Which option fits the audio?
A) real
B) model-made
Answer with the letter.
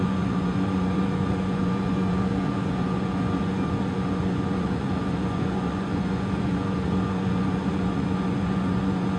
B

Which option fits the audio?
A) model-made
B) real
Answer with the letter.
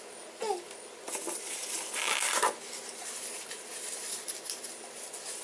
B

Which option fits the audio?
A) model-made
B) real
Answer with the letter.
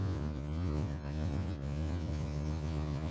A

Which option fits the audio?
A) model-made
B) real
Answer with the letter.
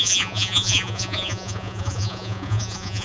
A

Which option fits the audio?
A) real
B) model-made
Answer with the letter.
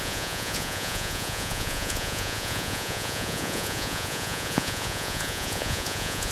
B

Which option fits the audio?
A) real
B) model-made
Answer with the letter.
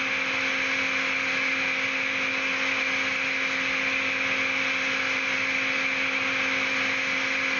A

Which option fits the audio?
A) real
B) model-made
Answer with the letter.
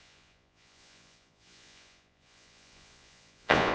B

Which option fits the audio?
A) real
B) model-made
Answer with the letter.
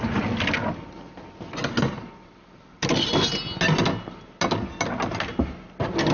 A